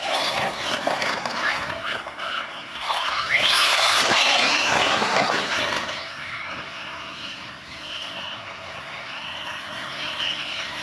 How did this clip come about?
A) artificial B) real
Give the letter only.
A